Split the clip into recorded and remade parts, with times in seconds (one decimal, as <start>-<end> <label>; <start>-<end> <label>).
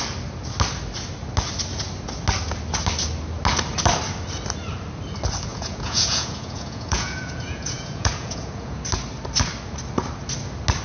0.0-5.5 recorded; 5.5-8.8 remade; 8.8-10.8 recorded